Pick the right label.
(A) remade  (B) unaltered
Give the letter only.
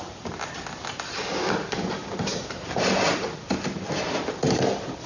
B